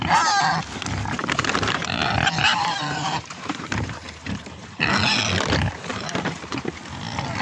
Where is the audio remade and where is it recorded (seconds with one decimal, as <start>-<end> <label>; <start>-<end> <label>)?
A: 0.0-1.2 recorded; 1.2-2.0 remade; 2.0-2.4 recorded; 2.4-4.9 remade; 4.9-5.9 recorded; 5.9-6.7 remade; 6.7-7.4 recorded